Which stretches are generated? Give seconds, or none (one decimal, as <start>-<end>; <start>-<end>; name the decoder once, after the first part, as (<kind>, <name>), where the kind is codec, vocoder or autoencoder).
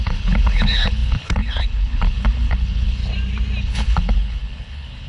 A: 0.0-3.0 (codec, HILCodec); 3.6-5.1